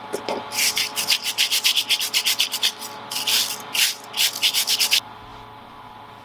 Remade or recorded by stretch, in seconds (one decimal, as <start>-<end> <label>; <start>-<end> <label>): 0.0-6.2 recorded